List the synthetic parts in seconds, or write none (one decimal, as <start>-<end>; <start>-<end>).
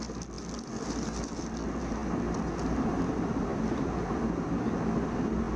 none